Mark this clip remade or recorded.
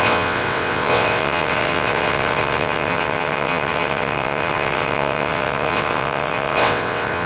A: remade